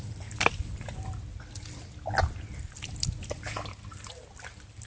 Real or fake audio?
real